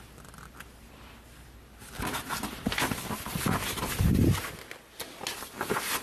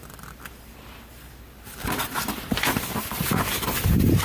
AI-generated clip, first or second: second